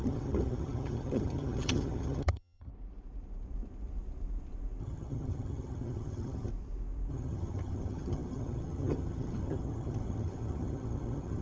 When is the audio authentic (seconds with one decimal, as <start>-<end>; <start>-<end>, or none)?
2.7-4.8; 6.5-7.1